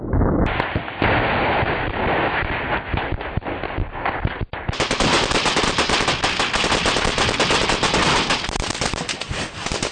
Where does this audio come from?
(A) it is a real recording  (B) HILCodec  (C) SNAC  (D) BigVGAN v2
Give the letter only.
A